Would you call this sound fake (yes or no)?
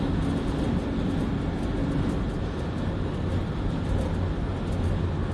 no